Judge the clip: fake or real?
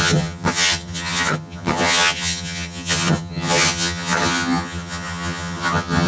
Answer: fake